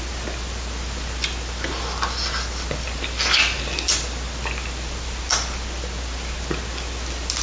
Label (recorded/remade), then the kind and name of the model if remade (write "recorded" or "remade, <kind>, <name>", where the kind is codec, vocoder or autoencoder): recorded